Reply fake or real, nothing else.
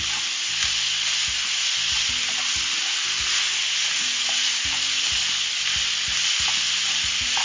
real